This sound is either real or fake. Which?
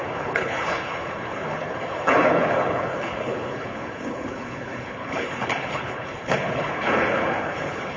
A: fake